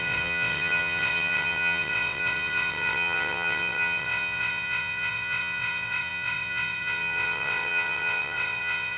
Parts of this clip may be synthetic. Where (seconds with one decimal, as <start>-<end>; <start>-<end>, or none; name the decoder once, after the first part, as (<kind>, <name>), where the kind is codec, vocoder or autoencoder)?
0.0-9.0 (vocoder, WaveNeXt)